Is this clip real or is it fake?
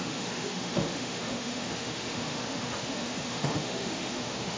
fake